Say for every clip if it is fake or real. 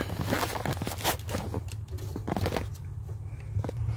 real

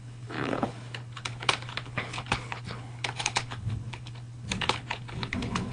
fake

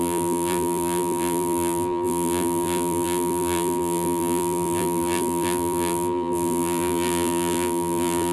fake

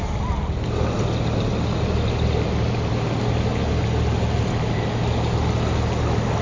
real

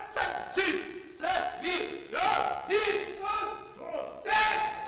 fake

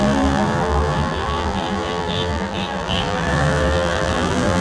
fake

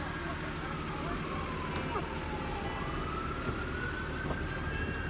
real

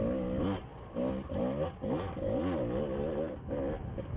real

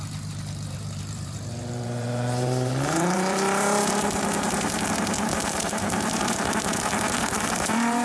fake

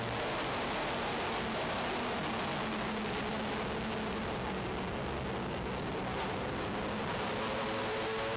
real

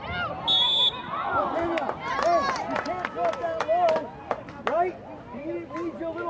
real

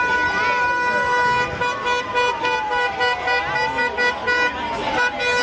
real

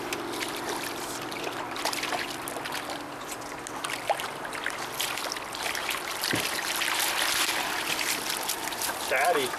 real